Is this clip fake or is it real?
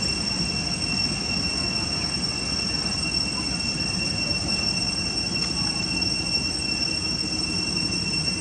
real